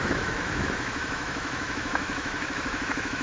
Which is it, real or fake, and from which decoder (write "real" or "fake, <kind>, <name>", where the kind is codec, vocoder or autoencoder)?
fake, autoencoder, DAC-VAE